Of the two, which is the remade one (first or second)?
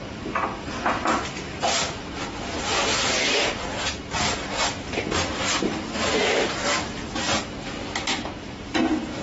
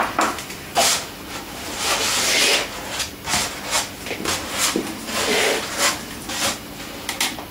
first